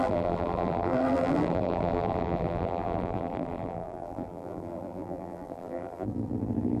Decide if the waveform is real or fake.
fake